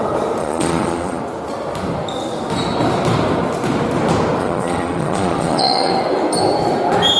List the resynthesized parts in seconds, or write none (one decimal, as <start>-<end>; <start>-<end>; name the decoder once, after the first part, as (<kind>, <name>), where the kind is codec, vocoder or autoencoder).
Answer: 0.4-1.2 (vocoder, Vocos); 4.4-5.9